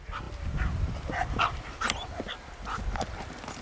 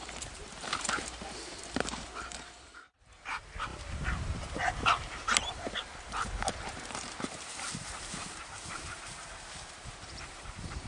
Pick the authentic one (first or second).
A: first